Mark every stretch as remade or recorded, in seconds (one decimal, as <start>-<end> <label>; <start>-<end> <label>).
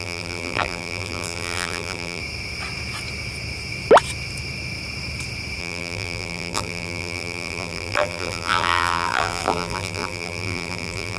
0.0-2.2 remade; 2.2-5.6 recorded; 5.6-11.2 remade